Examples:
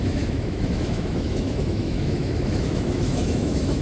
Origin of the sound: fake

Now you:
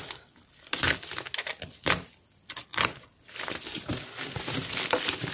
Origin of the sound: real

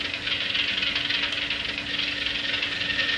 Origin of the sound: real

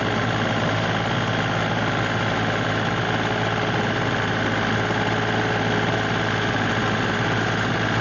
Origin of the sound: real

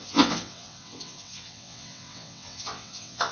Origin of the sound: fake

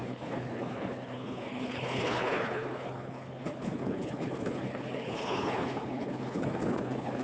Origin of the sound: fake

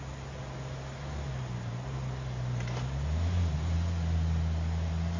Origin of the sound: real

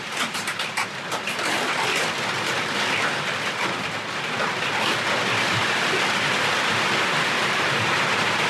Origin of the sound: real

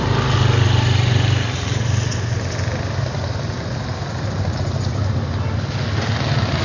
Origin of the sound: real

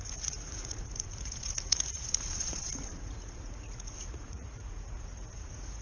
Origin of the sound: fake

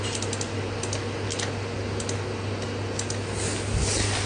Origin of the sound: real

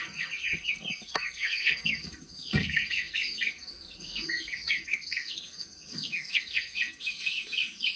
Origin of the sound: fake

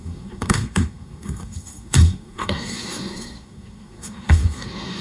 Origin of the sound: fake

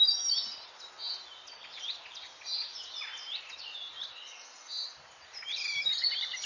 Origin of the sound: real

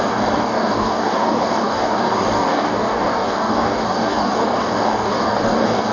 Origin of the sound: fake